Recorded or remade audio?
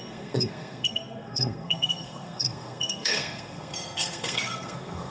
remade